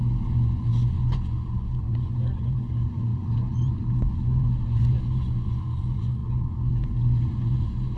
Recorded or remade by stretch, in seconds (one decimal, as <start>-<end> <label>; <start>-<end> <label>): 0.0-8.0 remade